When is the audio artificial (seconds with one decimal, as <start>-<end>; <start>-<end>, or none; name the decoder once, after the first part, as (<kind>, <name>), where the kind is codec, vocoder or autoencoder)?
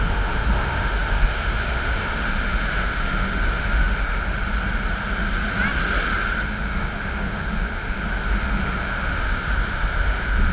0.0-4.3 (autoencoder, DAC-VAE); 6.4-10.5